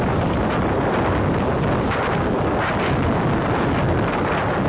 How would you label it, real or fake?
real